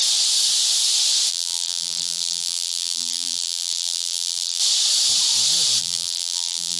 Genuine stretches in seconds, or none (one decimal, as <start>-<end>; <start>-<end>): 0.0-1.3; 4.6-5.8